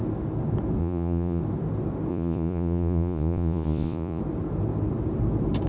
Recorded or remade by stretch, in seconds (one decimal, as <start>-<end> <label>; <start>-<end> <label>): 0.0-0.8 recorded; 0.8-1.4 remade; 1.4-2.1 recorded; 2.1-4.2 remade; 4.2-5.7 recorded